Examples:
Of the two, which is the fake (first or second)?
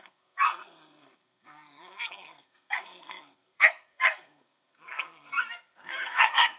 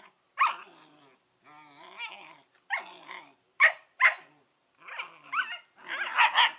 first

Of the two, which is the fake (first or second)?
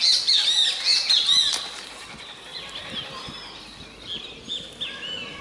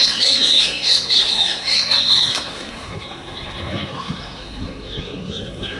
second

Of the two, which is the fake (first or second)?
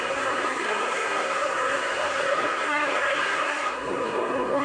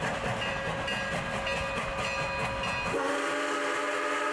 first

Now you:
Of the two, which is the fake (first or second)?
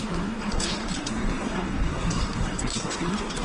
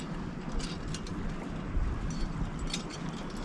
first